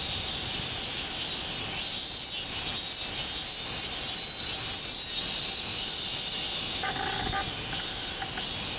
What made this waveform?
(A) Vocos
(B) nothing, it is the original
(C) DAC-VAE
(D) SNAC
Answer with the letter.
B